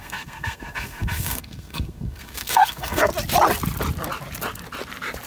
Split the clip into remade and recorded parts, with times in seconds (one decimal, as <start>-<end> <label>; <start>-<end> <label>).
0.0-3.1 remade; 3.1-5.3 recorded